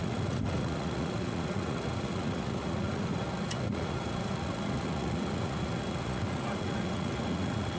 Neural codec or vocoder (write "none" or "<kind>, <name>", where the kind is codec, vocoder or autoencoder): vocoder, Vocos